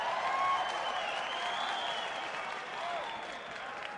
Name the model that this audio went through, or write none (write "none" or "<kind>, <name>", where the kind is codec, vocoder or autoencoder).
none